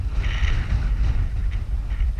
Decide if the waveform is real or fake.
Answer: fake